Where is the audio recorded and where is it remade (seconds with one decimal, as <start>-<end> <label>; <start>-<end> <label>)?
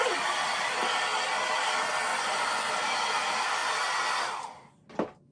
0.0-2.1 recorded; 2.1-2.7 remade; 2.7-5.3 recorded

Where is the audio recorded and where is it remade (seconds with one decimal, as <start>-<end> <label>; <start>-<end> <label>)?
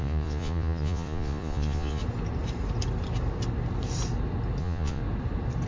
0.0-2.0 remade; 2.0-4.6 recorded; 4.6-5.0 remade; 5.0-5.7 recorded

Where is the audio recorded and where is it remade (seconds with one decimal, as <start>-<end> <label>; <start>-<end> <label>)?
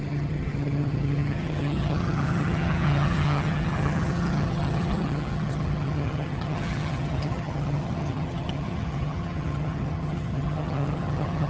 0.0-11.5 remade